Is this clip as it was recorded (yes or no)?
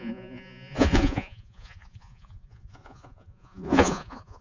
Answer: no